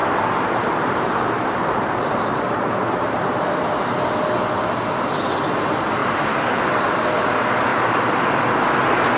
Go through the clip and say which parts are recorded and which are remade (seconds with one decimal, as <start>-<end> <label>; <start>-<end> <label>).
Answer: 0.0-3.8 remade; 3.8-6.0 recorded; 6.0-7.1 remade; 7.1-7.7 recorded; 7.7-8.2 remade; 8.2-9.2 recorded